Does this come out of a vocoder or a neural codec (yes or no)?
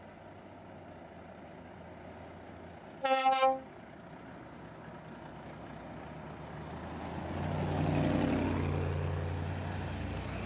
no